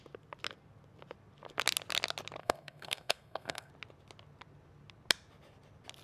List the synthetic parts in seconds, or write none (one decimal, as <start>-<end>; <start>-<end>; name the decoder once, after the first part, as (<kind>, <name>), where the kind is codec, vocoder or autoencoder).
2.4-3.7 (codec, SNAC)